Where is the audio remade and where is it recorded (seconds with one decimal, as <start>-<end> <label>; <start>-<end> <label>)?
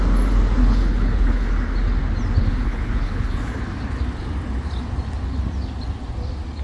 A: 0.0-0.6 recorded; 0.6-1.5 remade; 1.5-2.4 recorded; 2.4-3.6 remade; 3.6-6.6 recorded